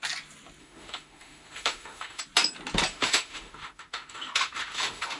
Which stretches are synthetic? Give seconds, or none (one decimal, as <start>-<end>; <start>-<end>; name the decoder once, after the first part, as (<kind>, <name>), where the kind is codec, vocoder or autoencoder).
0.6-2.2 (autoencoder, DAC-VAE); 2.9-5.2